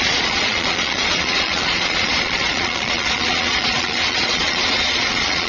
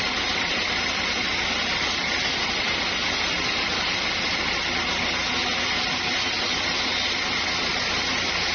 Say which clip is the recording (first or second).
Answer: second